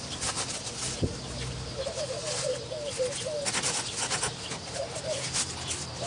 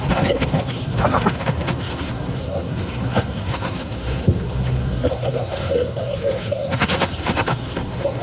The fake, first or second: second